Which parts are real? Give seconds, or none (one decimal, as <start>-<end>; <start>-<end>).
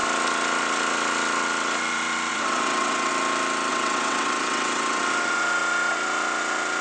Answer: 0.0-2.3; 3.1-3.7; 5.0-6.8